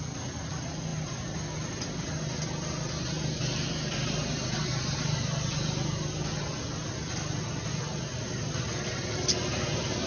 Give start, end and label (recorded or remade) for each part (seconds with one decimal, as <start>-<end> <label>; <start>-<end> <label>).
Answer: 0.0-10.1 recorded